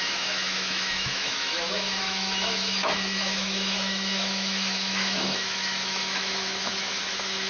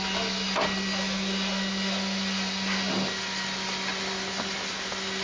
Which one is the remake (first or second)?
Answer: first